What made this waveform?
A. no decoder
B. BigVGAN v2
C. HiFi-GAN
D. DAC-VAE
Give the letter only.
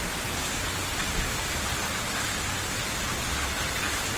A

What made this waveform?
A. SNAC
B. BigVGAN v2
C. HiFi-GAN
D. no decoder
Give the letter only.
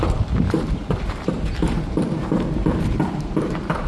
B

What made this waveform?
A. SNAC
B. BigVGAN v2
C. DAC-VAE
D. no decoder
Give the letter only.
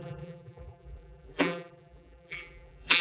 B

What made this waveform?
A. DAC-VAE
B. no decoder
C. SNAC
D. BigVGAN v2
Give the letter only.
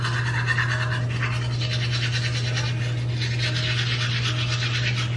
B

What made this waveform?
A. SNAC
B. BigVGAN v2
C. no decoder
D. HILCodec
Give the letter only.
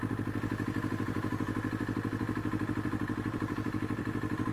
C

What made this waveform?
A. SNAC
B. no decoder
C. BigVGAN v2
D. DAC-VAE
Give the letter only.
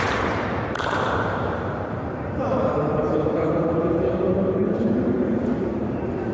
C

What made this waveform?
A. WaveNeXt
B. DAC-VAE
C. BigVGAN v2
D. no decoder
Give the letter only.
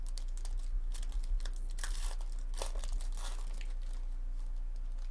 D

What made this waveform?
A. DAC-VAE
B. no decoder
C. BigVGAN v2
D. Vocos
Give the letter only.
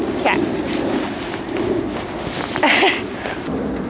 B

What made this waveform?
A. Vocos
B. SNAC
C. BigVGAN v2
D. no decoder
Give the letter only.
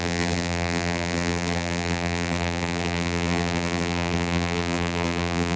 C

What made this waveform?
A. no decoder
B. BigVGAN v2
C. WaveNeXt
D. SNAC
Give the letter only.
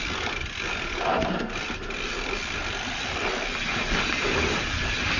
B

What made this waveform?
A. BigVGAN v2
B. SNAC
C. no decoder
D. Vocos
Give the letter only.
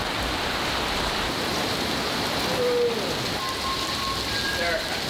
C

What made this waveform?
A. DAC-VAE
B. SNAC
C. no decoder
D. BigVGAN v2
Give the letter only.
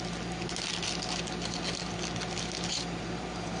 C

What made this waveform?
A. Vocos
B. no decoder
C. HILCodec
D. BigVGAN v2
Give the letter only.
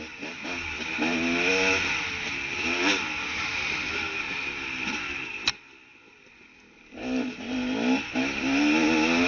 B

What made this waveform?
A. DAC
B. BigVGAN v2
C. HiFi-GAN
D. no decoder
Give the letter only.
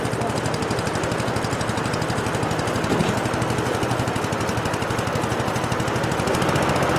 D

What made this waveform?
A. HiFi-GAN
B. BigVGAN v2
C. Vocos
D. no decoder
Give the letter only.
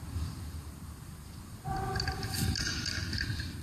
D